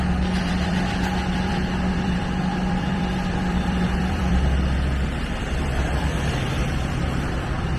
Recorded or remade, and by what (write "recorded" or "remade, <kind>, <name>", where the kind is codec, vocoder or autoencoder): remade, vocoder, BigVGAN v2